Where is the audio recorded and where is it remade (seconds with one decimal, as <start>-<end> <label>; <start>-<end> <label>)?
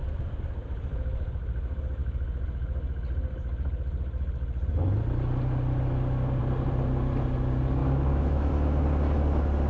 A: 0.0-7.8 recorded; 7.8-8.5 remade; 8.5-9.7 recorded